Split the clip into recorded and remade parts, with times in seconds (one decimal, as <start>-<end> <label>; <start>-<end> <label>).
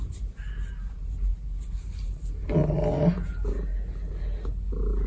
0.0-5.1 recorded